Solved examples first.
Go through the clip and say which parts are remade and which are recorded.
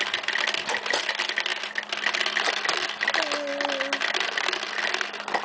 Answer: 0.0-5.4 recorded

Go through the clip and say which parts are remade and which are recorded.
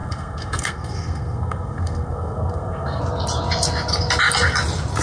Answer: 0.0-3.0 remade; 3.0-5.0 recorded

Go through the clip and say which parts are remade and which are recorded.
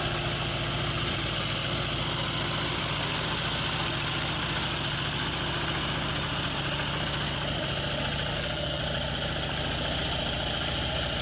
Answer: 0.0-8.3 recorded; 8.3-8.8 remade; 8.8-11.2 recorded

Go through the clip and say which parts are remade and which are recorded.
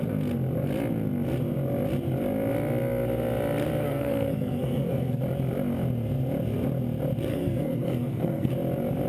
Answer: 0.0-3.8 recorded; 3.8-5.2 remade; 5.2-7.3 recorded; 7.3-8.5 remade; 8.5-9.1 recorded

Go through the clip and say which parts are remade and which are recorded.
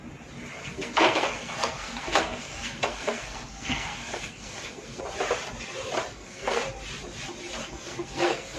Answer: 0.0-0.6 recorded; 0.6-5.0 remade; 5.0-6.1 recorded; 6.1-6.6 remade; 6.6-7.6 recorded; 7.6-8.6 remade